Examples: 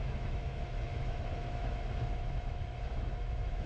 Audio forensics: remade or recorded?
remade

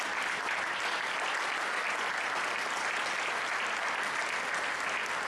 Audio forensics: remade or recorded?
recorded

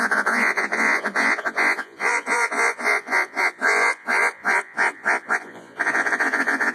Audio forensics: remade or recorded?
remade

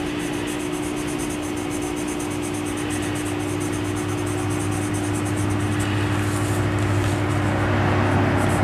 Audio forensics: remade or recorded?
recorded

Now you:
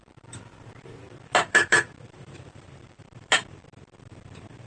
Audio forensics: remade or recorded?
remade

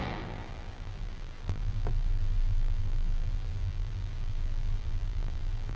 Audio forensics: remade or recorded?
remade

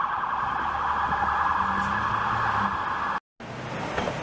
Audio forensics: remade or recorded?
recorded